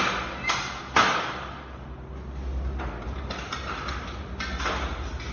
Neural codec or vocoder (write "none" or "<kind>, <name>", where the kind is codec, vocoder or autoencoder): none